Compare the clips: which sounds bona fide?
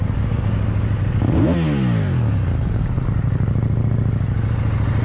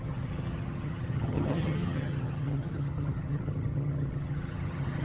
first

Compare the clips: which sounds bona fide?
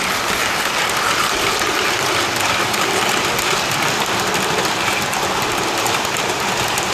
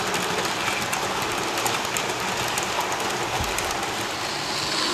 second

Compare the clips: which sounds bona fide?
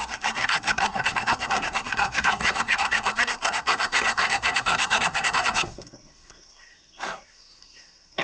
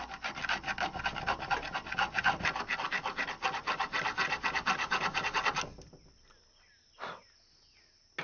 second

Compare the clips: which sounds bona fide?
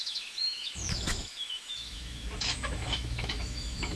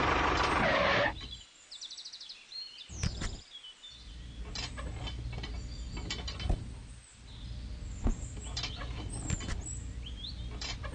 second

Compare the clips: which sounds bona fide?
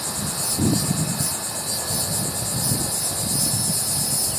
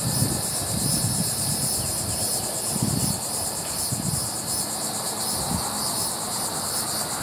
first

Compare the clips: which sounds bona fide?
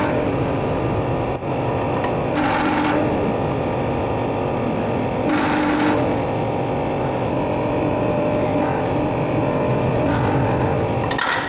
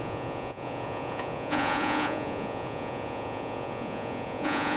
first